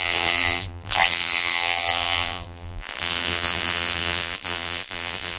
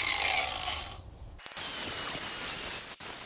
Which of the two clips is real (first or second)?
second